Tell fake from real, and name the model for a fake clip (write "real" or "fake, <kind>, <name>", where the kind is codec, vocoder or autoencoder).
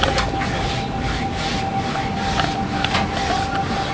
real